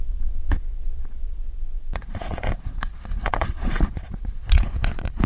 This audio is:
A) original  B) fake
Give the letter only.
B